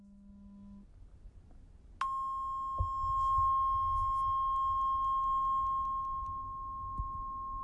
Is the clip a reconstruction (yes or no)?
no